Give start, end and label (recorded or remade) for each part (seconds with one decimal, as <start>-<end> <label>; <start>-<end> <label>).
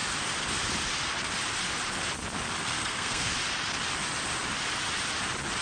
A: 0.0-2.6 recorded; 2.6-3.3 remade; 3.3-5.6 recorded